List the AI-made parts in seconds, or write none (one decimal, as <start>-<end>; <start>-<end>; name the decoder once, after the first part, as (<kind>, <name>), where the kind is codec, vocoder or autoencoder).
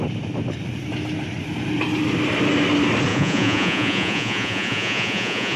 3.1-5.6 (vocoder, Vocos)